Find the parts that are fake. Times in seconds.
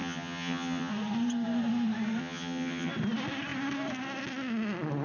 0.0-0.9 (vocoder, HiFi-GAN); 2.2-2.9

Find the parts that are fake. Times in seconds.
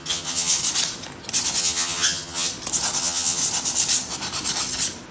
0.0-0.6 (vocoder, HiFi-GAN); 1.6-2.5; 3.0-3.4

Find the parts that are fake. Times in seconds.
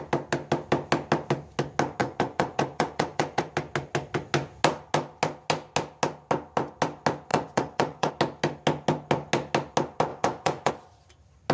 2.0-3.5 (vocoder, Vocos); 7.3-8.1; 10.1-10.7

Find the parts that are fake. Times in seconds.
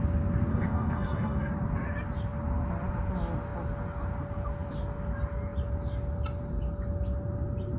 0.5-1.5 (codec, SNAC)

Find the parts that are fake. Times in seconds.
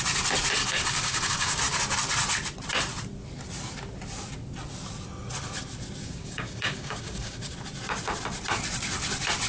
0.6-1.6 (codec, DAC); 6.0-7.5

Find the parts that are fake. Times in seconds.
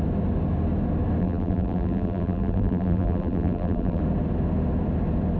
1.2-4.0 (vocoder, BigVGAN v2)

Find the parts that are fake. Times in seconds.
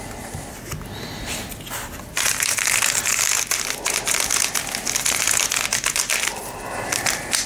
none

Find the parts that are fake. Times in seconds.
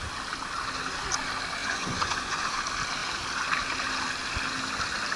1.6-2.4 (vocoder, Vocos)